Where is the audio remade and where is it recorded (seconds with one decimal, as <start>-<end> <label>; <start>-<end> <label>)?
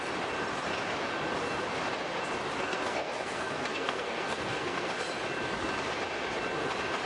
0.0-2.6 recorded; 2.6-4.9 remade; 4.9-7.1 recorded